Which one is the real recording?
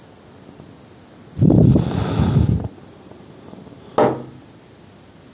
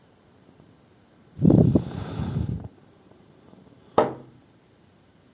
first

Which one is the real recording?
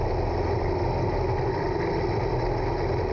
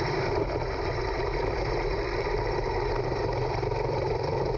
first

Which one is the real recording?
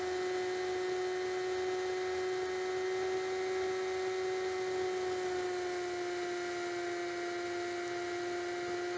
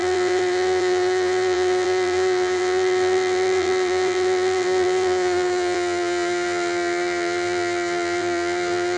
first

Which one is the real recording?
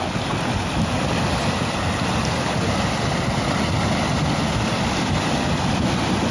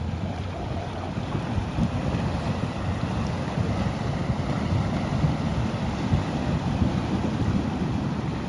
first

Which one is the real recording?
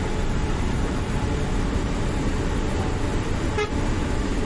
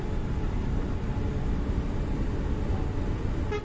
second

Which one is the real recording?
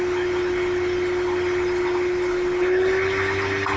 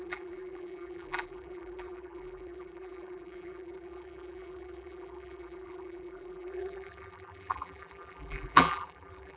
first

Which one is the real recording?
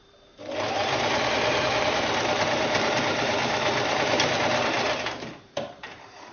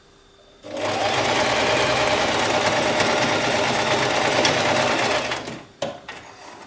second